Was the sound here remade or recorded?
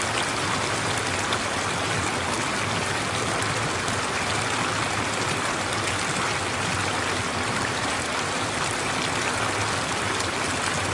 recorded